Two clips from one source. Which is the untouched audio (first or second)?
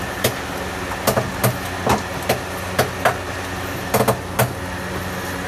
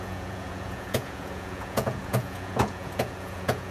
first